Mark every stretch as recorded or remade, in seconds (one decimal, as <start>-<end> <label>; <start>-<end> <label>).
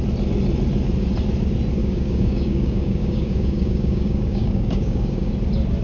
0.0-1.8 recorded; 1.8-5.3 remade; 5.3-5.8 recorded